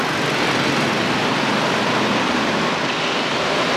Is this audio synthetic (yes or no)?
no